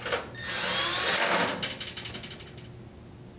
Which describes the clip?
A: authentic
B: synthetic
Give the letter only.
A